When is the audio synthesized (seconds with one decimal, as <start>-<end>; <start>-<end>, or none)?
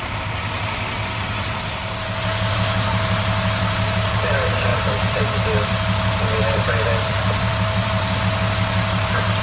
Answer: 4.7-8.2